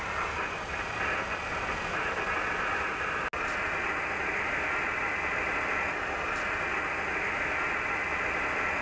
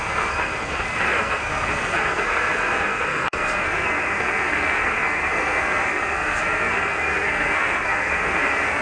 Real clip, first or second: first